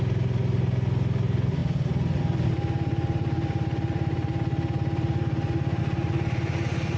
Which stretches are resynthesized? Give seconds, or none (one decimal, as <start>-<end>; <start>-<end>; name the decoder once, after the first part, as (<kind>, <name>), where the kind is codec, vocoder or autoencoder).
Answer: none